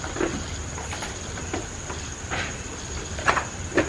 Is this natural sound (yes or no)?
yes